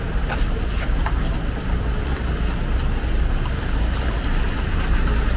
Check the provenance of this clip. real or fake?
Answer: real